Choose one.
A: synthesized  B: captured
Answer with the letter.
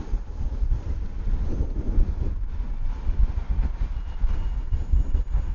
B